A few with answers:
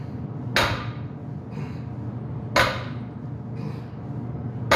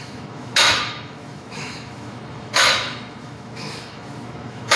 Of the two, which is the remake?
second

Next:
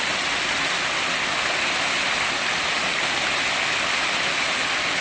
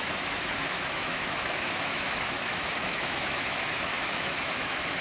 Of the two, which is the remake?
second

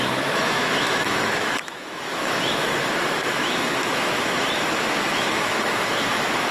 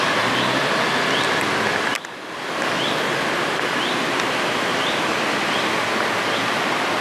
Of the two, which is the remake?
first